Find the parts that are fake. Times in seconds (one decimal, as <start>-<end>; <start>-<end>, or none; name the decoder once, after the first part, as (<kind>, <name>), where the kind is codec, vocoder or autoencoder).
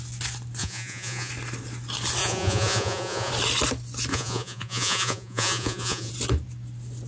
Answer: 0.6-1.3 (vocoder, Vocos); 2.2-3.3; 4.1-6.1